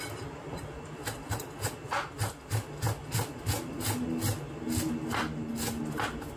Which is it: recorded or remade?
recorded